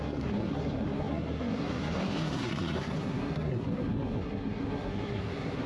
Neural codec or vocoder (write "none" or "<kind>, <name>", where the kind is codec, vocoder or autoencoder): codec, SNAC